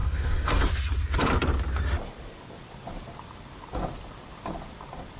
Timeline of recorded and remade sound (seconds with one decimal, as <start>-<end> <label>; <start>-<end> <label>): 0.0-0.6 remade; 0.6-5.2 recorded